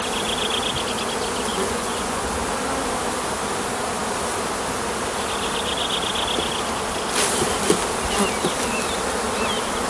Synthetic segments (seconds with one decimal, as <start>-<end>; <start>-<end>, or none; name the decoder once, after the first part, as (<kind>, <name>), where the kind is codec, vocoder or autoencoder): 1.5-2.2 (vocoder, Vocos)